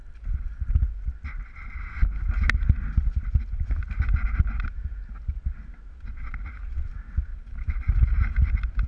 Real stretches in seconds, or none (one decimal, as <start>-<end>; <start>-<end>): 0.8-7.3; 8.5-8.9